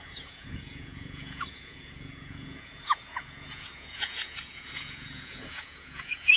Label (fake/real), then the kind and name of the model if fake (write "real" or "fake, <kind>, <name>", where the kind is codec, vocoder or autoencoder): fake, vocoder, Vocos